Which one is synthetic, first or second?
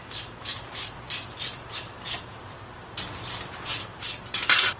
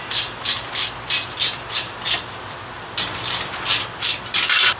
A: first